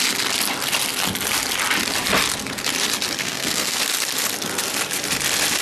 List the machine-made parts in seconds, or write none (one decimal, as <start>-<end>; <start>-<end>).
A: 3.2-3.8